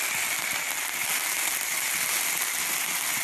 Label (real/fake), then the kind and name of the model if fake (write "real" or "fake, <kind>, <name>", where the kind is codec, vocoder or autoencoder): real